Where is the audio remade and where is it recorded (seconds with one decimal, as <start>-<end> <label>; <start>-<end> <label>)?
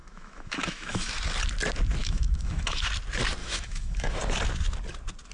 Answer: 0.0-1.1 remade; 1.1-2.0 recorded; 2.0-2.9 remade; 2.9-3.4 recorded; 3.4-4.2 remade; 4.2-5.3 recorded